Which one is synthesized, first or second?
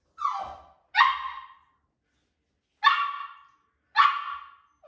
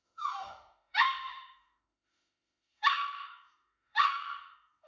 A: second